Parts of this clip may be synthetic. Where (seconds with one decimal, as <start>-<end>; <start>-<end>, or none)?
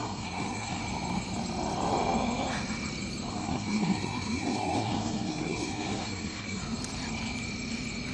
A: 0.0-0.8; 3.3-6.6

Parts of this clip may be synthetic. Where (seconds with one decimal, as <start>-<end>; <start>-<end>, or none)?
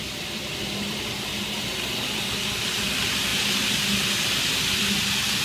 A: none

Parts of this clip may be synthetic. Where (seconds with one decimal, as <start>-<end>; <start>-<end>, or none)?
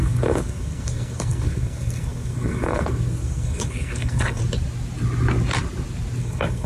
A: 0.0-4.4; 6.2-6.7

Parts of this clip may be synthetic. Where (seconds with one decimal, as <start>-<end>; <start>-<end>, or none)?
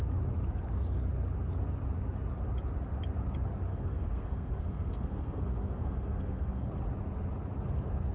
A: 3.7-6.7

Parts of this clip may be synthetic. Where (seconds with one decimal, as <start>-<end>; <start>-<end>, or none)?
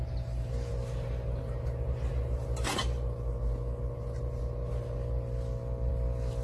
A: none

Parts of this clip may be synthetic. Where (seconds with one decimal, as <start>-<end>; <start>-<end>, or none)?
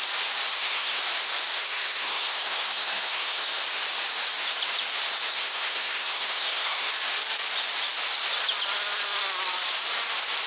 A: 0.5-1.0; 1.5-3.6; 5.3-6.9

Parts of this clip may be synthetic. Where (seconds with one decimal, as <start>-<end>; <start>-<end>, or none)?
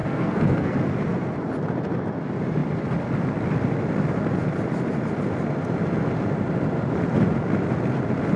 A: 0.0-0.8